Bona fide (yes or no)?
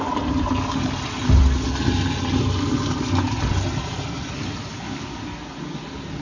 yes